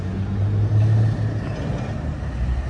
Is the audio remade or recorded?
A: recorded